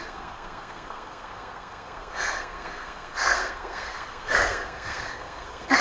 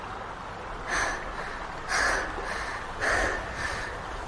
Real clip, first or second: second